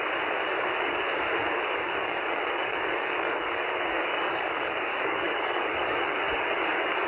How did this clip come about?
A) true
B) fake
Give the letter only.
B